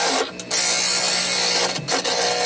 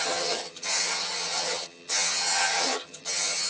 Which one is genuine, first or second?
first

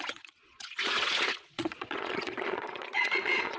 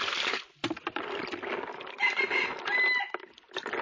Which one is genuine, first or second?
second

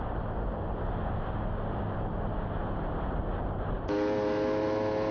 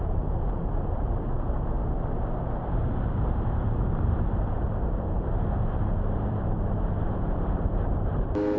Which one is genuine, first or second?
first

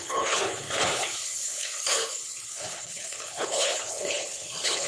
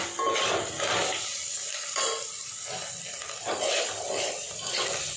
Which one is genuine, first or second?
second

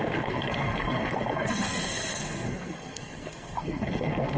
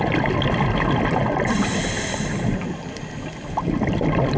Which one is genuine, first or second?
second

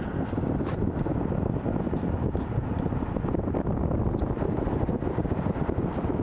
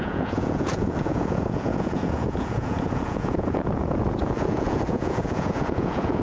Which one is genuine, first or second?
first